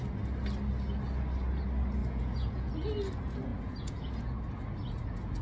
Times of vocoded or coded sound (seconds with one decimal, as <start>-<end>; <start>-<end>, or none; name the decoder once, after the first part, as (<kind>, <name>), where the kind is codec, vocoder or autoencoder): 2.0-2.7 (vocoder, Vocos); 3.5-4.2